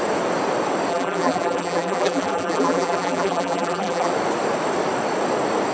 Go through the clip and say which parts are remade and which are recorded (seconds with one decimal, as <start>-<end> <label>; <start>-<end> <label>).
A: 0.0-0.9 recorded; 0.9-4.1 remade; 4.1-5.7 recorded